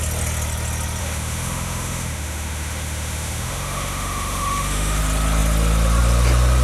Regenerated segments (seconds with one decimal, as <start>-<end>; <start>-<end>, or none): 1.0-5.0